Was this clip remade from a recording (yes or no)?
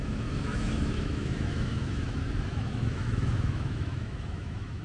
yes